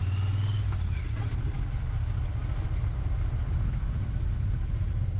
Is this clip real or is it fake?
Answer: real